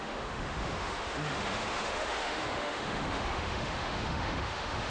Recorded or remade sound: remade